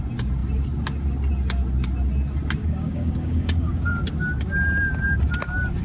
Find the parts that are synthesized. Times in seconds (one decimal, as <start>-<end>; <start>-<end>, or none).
2.6-4.0